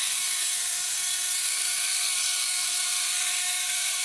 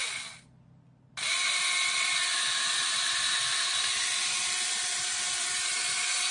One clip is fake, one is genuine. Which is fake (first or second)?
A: first